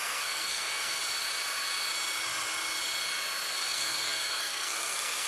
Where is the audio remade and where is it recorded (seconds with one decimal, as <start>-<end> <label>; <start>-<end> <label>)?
0.0-1.0 remade; 1.0-3.5 recorded; 3.5-5.3 remade